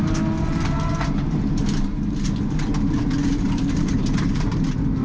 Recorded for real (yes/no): no